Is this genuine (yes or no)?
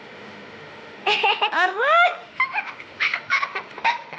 no